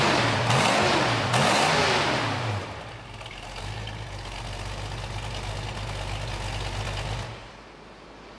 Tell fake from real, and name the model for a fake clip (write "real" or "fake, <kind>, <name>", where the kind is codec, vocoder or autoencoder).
real